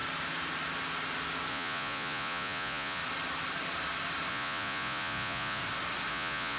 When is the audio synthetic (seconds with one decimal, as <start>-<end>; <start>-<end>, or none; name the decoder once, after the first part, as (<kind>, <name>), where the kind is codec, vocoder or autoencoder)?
1.5-3.0 (vocoder, Vocos); 4.3-5.6; 6.1-6.6